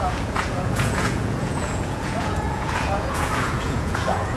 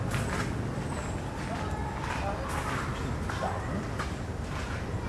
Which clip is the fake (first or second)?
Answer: first